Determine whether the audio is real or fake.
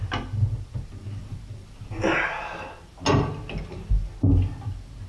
real